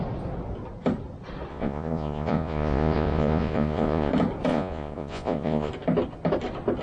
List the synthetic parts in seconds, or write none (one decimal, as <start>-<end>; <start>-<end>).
1.5-4.1; 4.5-5.7

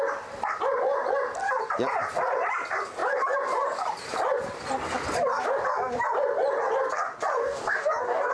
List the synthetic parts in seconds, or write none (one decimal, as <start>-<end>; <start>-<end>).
7.4-8.3

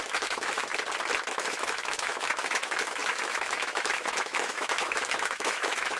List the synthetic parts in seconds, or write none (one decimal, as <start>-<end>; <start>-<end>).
0.0-0.7; 1.3-6.0

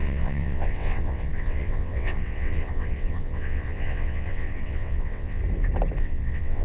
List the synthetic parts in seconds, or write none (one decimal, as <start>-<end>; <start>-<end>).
0.0-5.4; 6.0-6.6

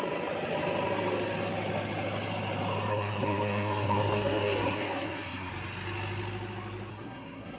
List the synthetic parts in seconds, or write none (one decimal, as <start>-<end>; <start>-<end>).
2.9-5.5; 6.9-7.6

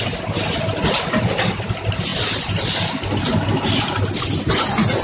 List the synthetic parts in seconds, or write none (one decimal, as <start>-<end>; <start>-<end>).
none

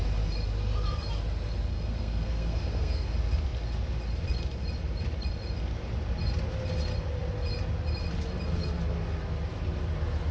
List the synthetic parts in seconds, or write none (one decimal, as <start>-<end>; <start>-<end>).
1.7-3.1

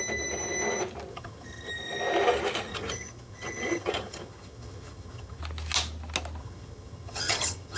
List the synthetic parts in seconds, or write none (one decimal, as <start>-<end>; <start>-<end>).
1.1-1.7; 2.7-5.4; 6.4-7.8